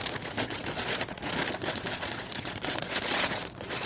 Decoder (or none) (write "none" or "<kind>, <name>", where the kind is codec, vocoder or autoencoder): vocoder, Vocos